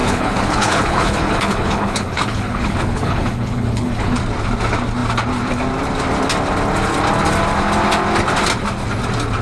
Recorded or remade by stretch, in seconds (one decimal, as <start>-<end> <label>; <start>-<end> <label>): 0.0-4.2 remade; 4.2-9.4 recorded

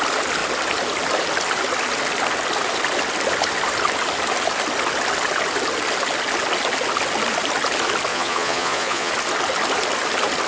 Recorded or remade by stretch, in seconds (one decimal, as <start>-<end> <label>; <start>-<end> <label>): 0.0-8.1 recorded; 8.1-9.1 remade; 9.1-10.5 recorded

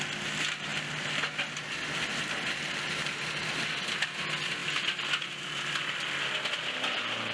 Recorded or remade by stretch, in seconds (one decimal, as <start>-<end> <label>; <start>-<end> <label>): 0.0-7.3 recorded

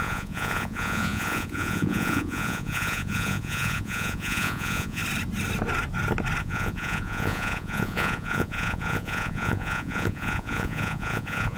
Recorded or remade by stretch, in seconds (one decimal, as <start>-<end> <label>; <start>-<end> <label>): 0.0-5.0 remade; 5.0-6.4 recorded; 6.4-11.6 remade

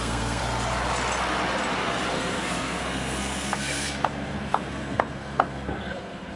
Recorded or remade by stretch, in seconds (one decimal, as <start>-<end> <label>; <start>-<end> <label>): 0.0-0.4 remade; 0.4-2.1 recorded; 2.1-6.4 remade